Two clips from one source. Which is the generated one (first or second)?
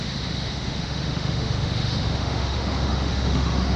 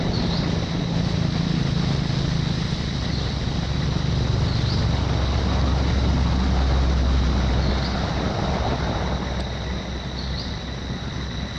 first